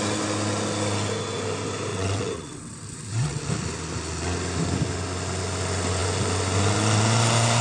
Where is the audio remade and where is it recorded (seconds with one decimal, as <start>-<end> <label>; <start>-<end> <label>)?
0.0-1.9 recorded; 1.9-3.4 remade; 3.4-7.6 recorded